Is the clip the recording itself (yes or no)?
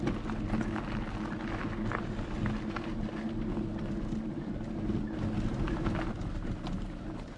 yes